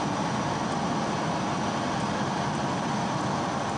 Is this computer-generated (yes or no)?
no